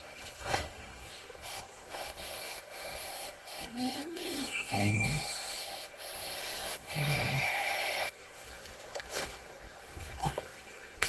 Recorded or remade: remade